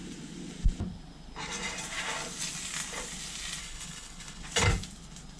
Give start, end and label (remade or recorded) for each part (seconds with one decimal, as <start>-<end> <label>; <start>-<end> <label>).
0.0-3.6 recorded; 3.6-4.4 remade; 4.4-5.4 recorded